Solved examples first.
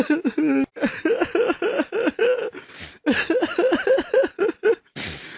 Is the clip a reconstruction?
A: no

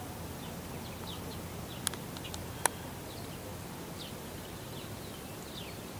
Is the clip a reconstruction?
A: no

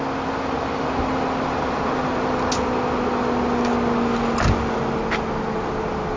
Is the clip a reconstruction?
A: no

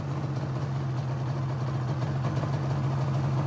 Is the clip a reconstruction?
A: no